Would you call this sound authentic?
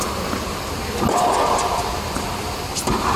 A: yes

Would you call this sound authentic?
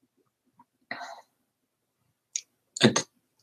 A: yes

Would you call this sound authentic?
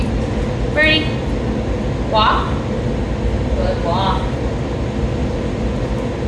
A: yes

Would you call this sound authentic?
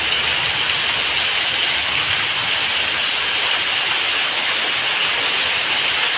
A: yes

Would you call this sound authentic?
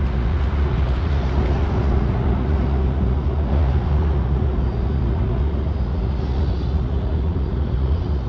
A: no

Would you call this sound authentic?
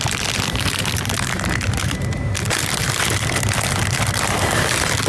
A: no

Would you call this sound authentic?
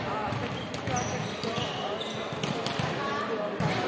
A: yes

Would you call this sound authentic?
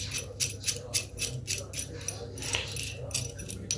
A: yes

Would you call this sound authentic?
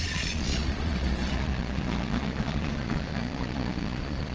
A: no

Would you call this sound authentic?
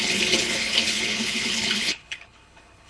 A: no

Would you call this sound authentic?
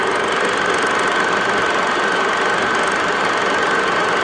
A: yes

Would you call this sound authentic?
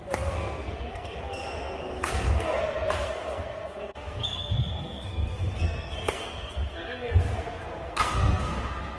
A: no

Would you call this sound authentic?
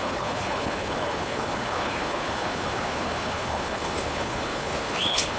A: no